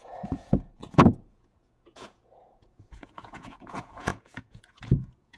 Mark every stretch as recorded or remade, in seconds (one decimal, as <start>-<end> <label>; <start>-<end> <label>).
0.0-5.4 remade